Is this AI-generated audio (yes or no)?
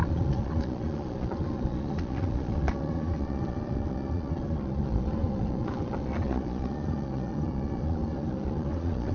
yes